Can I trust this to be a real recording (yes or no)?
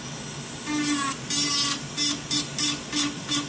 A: yes